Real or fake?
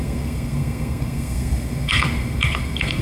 fake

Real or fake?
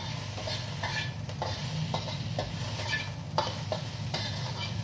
real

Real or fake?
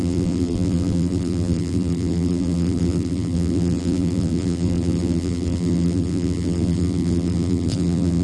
fake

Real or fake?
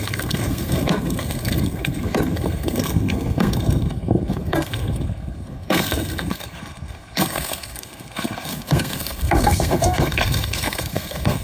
fake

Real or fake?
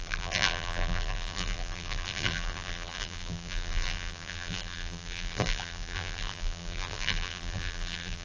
fake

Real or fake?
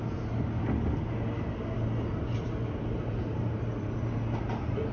real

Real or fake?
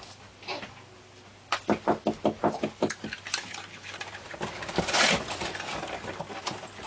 real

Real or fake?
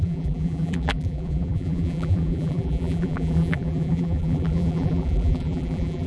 fake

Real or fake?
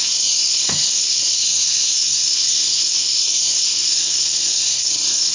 fake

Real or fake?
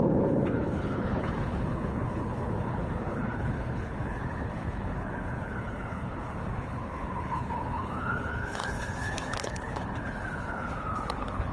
fake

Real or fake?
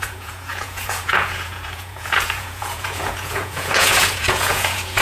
fake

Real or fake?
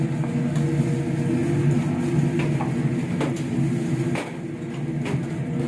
real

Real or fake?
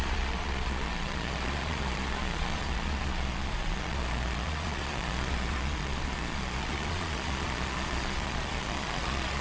fake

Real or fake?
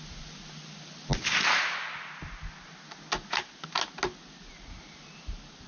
real